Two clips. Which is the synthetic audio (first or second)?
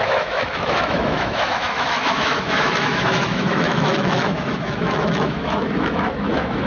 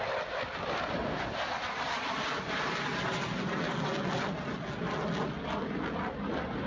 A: first